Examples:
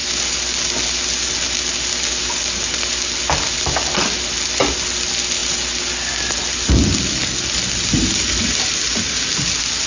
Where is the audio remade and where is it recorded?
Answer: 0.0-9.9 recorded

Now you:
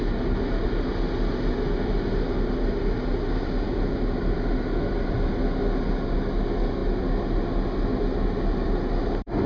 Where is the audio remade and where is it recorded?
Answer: 0.0-9.5 recorded

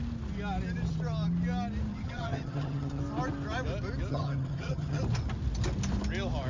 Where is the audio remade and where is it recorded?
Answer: 0.0-1.9 recorded; 1.9-3.0 remade; 3.0-4.1 recorded; 4.1-5.0 remade; 5.0-6.5 recorded